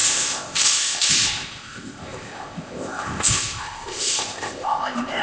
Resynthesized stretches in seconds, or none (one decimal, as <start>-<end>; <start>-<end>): 0.0-5.2